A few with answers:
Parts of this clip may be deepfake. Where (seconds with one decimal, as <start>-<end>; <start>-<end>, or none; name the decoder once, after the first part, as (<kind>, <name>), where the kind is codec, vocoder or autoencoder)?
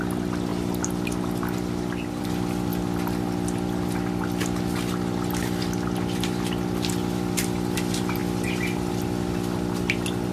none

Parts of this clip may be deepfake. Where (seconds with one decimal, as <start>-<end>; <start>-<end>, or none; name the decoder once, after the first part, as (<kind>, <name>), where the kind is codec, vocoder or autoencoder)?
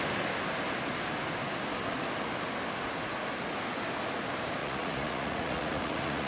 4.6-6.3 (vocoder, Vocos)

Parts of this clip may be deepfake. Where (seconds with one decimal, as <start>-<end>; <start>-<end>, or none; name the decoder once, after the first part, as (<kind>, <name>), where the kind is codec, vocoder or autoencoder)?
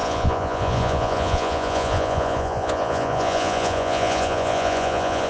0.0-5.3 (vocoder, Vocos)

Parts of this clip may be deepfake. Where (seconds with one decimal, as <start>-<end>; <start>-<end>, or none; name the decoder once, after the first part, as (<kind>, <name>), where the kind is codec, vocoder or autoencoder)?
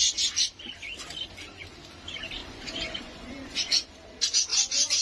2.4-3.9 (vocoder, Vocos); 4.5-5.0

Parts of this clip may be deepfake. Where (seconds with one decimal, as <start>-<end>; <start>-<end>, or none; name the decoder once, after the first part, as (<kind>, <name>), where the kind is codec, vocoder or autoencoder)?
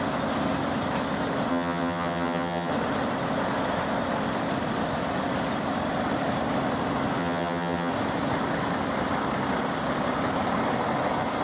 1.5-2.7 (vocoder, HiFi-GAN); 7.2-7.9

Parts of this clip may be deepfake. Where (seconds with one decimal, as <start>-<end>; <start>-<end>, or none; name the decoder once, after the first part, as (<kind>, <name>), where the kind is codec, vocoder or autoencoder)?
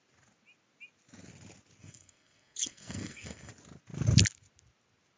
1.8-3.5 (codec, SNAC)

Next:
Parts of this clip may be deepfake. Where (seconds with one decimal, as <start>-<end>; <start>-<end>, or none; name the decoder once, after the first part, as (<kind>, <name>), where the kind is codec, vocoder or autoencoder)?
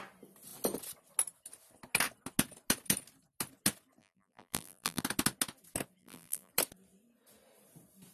4.0-5.0 (vocoder, BigVGAN v2); 6.0-6.5